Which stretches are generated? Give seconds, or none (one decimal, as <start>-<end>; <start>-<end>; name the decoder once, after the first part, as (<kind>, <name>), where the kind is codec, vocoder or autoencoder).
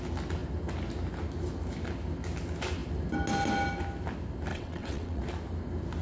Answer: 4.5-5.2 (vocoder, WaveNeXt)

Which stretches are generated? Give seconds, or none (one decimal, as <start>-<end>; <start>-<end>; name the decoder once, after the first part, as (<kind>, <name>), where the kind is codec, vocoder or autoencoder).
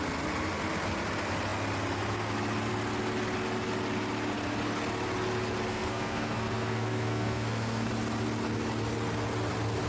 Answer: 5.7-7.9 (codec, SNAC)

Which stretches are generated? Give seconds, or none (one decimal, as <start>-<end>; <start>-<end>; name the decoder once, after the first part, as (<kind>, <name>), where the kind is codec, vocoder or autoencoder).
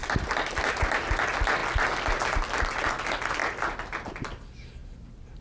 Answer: none